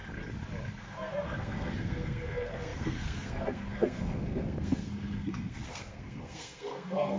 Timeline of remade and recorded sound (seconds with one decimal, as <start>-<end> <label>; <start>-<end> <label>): 0.0-0.8 recorded; 0.8-7.2 remade